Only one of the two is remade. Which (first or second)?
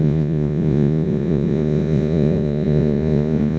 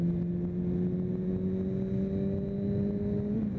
first